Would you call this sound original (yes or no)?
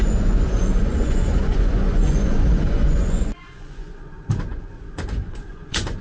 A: no